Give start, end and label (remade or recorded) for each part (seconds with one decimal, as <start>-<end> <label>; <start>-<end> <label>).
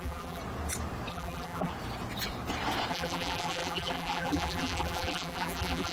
0.0-0.4 remade; 0.4-1.1 recorded; 1.1-1.7 remade; 1.7-2.9 recorded; 2.9-5.9 remade